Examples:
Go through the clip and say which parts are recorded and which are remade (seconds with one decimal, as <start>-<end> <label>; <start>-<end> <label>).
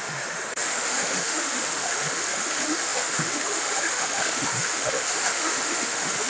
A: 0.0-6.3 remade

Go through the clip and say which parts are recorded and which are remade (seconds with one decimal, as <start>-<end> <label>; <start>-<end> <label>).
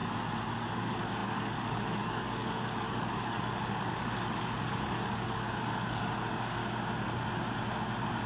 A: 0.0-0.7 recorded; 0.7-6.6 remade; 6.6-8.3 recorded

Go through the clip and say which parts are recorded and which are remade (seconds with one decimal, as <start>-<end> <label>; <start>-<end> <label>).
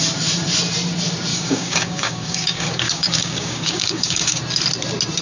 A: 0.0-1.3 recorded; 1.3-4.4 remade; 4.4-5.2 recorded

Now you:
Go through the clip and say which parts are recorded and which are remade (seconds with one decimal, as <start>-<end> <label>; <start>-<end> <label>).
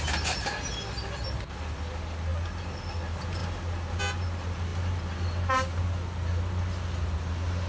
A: 0.0-7.7 recorded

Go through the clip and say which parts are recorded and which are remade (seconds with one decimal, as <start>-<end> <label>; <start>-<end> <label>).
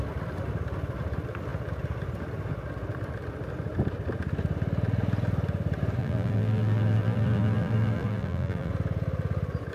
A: 0.0-6.0 recorded; 6.0-8.7 remade; 8.7-9.7 recorded